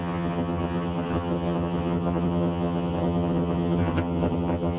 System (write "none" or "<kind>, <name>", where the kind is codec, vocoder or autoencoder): vocoder, HiFi-GAN